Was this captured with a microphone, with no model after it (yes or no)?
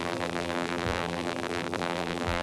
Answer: no